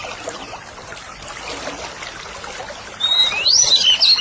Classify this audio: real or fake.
real